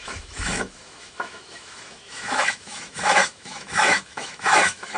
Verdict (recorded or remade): remade